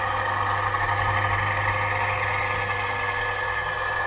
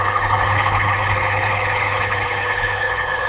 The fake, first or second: second